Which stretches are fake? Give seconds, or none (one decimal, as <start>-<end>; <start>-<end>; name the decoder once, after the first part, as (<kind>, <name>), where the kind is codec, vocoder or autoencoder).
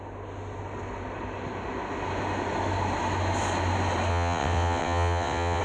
4.1-5.6 (vocoder, WaveNeXt)